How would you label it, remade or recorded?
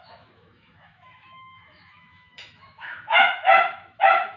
remade